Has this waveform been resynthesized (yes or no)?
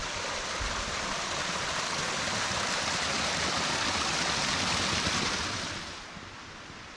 no